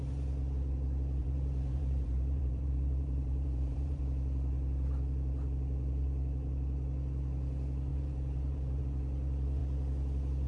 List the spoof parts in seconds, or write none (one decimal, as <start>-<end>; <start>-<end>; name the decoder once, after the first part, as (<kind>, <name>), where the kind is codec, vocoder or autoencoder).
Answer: 1.2-4.0 (vocoder, BigVGAN v2); 7.9-8.8